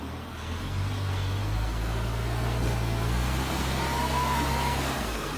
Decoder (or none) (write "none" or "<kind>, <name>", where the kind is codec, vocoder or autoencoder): codec, SNAC